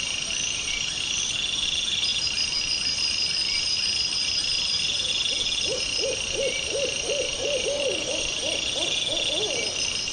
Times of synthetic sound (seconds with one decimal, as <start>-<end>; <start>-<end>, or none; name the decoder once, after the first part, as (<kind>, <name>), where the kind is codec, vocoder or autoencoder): none